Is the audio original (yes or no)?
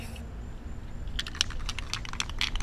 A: yes